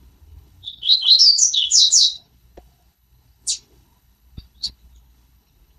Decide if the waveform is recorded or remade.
remade